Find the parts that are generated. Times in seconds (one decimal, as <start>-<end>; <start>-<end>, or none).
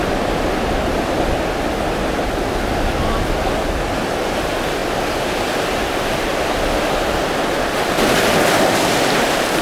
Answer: none